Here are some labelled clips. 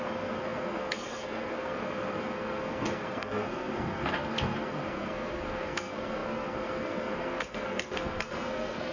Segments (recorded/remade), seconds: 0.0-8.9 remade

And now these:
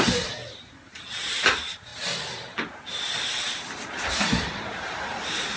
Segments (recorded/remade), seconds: 0.0-1.9 remade; 1.9-3.9 recorded; 3.9-5.6 remade

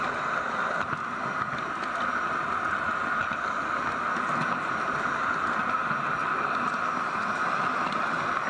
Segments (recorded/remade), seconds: 0.0-8.5 recorded

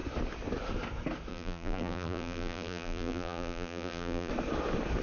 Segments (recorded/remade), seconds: 0.0-1.3 recorded; 1.3-4.3 remade; 4.3-5.0 recorded